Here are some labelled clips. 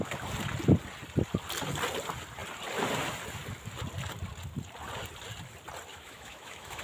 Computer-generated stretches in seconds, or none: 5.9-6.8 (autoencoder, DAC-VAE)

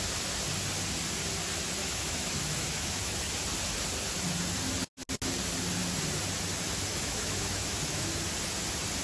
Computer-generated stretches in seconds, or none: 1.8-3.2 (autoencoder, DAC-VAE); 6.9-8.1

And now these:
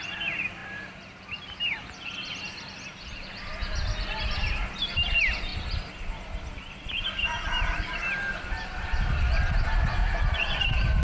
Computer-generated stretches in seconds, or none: 10.0-10.6 (vocoder, Vocos)

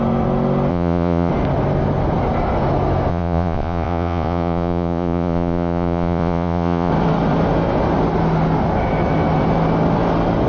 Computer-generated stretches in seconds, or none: 0.7-1.3 (vocoder, Vocos); 3.1-6.9

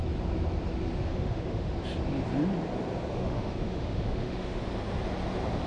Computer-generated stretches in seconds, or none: 1.1-1.7 (autoencoder, DAC-VAE); 3.1-4.6

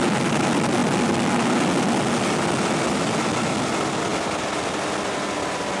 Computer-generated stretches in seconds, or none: none